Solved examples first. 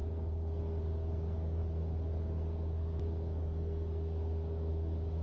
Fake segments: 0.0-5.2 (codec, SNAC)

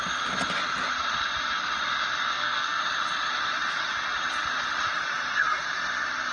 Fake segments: 2.3-2.8 (codec, SNAC)

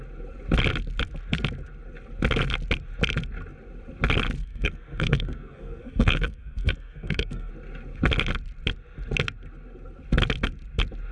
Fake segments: 4.4-7.5 (codec, SNAC)